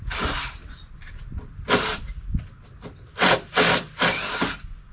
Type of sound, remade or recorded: recorded